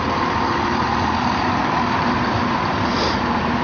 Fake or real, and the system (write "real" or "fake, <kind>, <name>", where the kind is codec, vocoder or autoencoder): fake, vocoder, BigVGAN v2